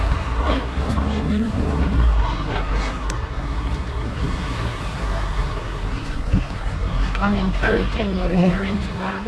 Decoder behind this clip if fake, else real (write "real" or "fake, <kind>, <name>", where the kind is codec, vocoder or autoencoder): fake, codec, SNAC